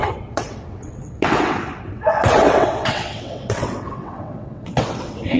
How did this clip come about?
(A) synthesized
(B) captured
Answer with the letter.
A